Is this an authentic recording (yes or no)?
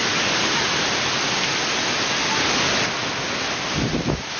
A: yes